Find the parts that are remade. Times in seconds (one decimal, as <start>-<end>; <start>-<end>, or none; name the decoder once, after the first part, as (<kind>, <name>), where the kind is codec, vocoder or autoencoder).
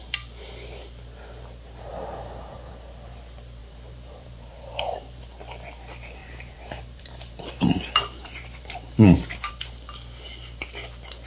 1.9-2.7 (vocoder, BigVGAN v2); 3.6-5.2; 6.2-9.5